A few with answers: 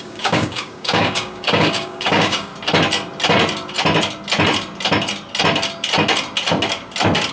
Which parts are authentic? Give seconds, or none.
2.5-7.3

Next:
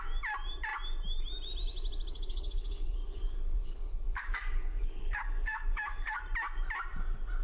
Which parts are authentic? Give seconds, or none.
0.0-2.1; 6.2-7.4

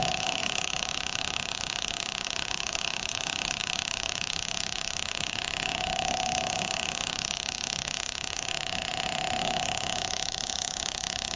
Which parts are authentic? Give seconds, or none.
8.8-9.4

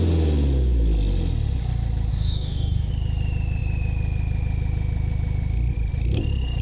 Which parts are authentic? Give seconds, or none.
0.0-2.1; 2.9-6.6